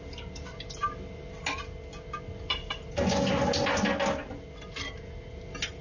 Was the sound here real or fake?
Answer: real